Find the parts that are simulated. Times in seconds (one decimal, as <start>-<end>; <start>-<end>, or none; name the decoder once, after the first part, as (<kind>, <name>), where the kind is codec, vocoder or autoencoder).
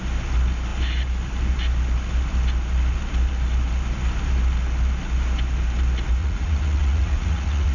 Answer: 6.2-7.7 (vocoder, Vocos)